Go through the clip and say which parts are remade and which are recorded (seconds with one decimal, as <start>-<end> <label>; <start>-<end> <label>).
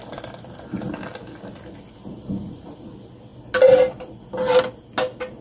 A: 0.0-5.4 recorded